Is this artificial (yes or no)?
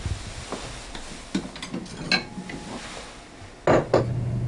no